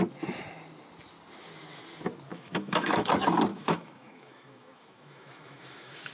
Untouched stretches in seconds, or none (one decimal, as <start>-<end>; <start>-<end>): 0.0-2.3; 3.1-3.5